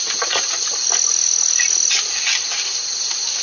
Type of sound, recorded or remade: recorded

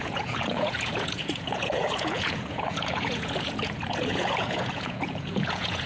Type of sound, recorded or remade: remade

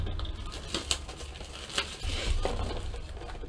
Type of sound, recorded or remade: recorded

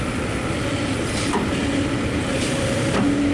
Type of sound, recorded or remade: recorded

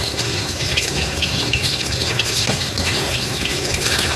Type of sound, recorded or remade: remade